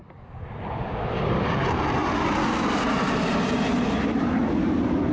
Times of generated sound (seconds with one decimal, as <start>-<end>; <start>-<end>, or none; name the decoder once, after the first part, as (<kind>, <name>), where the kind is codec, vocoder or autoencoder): none